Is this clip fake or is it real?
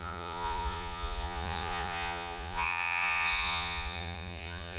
fake